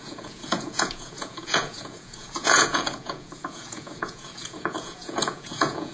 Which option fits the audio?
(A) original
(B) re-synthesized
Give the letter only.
B